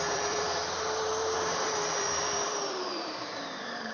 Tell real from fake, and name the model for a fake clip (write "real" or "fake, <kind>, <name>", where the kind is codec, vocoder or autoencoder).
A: fake, vocoder, BigVGAN v2